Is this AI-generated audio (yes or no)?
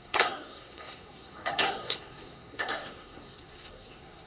yes